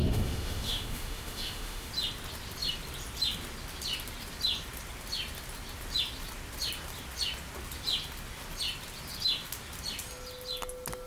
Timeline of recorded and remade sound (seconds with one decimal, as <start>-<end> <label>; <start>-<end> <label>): 0.0-1.9 remade; 1.9-11.1 recorded